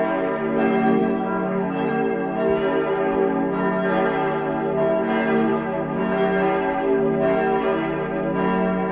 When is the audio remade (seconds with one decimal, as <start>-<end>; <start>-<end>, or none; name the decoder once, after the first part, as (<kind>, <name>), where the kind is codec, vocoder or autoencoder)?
1.0-1.9 (autoencoder, DAC-VAE); 5.5-6.0